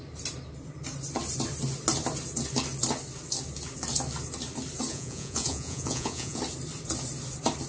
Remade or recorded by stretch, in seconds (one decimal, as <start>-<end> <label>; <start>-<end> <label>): 0.0-4.9 recorded; 4.9-6.4 remade; 6.4-7.7 recorded